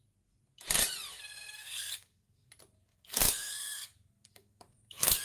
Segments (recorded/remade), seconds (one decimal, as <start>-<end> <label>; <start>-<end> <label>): 0.0-1.1 recorded; 1.1-2.5 remade; 2.5-2.9 recorded; 2.9-5.2 remade